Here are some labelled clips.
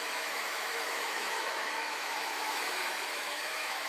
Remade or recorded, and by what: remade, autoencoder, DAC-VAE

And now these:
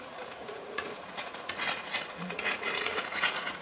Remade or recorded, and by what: remade, vocoder, Vocos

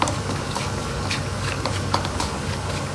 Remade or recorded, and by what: remade, codec, DAC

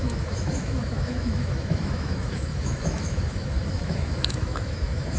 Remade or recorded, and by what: remade, autoencoder, DAC-VAE